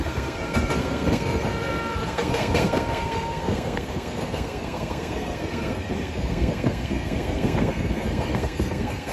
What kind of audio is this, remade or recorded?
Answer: remade